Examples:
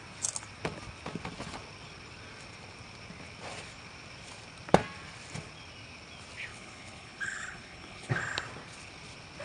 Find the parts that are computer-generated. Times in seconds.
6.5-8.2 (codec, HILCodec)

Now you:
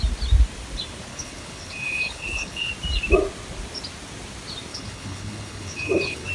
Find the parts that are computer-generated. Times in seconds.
1.1-2.7 (codec, HILCodec); 4.7-6.3

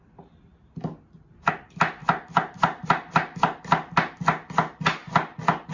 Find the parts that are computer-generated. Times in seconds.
none

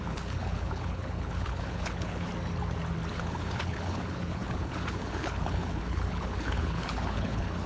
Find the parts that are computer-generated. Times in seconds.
0.0-2.3 (codec, HILCodec); 3.1-7.7

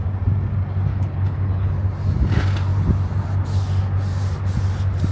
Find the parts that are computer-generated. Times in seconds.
0.9-1.7 (codec, HILCodec)